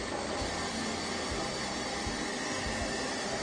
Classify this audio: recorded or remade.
recorded